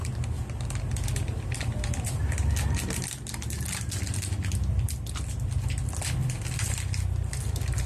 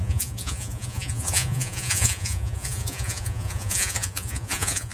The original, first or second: first